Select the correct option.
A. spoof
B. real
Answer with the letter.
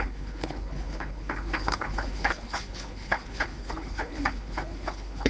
A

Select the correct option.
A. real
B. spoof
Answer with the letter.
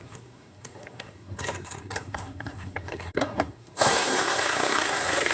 B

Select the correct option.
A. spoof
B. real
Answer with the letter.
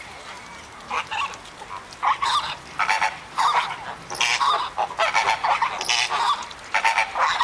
B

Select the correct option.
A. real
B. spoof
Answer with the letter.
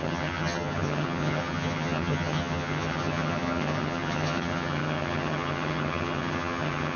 B